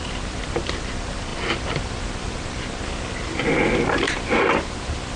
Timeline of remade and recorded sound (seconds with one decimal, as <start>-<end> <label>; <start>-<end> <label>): 0.0-5.2 recorded